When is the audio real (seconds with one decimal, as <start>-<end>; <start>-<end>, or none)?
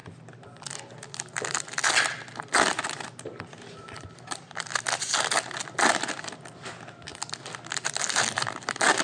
0.0-9.0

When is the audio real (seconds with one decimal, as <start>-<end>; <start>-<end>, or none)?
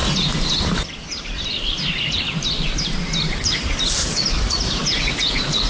0.0-4.0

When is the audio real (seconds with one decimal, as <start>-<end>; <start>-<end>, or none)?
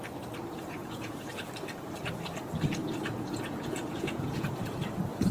0.0-0.8; 1.3-2.8; 4.8-5.3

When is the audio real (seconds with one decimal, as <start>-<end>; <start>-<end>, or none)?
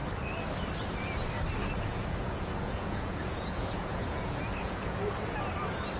0.0-1.9; 5.0-6.0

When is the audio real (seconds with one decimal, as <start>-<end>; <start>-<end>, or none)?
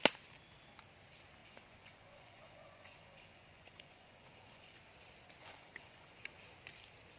0.0-1.4; 4.8-5.4; 6.2-7.2